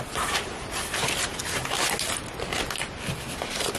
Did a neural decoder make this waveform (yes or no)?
no